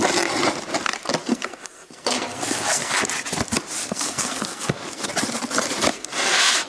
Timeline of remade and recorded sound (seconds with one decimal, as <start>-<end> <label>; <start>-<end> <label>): 0.0-1.2 recorded; 1.2-3.0 remade; 3.0-3.8 recorded; 3.8-5.1 remade; 5.1-5.9 recorded; 5.9-6.7 remade